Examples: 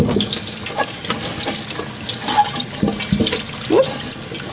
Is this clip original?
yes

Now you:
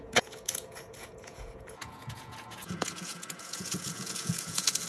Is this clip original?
no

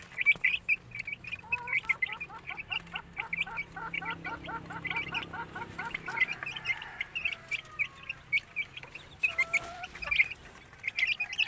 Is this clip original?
yes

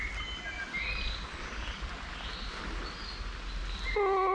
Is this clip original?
yes